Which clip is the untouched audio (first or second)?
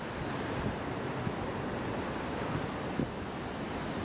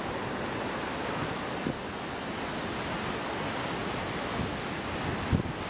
second